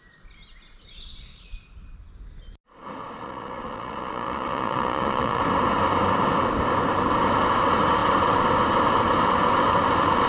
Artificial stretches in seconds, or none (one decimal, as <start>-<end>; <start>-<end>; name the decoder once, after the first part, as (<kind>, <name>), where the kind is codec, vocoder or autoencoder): 3.0-5.4 (vocoder, Vocos)